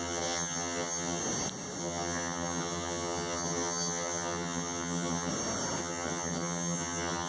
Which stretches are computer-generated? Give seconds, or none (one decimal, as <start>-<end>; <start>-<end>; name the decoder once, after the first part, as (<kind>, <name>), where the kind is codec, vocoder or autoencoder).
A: 0.0-1.2 (vocoder, HiFi-GAN); 1.8-5.3; 5.8-7.3

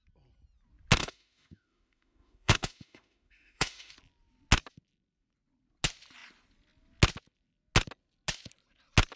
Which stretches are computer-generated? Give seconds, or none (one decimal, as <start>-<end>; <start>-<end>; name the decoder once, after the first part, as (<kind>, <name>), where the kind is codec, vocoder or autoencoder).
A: 1.0-3.9 (autoencoder, DAC-VAE)

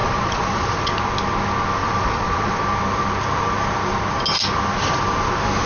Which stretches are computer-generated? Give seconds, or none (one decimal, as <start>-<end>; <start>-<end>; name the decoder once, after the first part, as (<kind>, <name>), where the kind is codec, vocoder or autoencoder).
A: 0.0-0.9 (vocoder, Vocos); 1.8-2.6

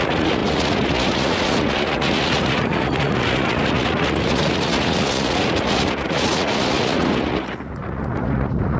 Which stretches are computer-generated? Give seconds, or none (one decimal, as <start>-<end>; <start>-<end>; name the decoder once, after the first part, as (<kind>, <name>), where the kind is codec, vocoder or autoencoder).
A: 0.0-8.8 (vocoder, Vocos)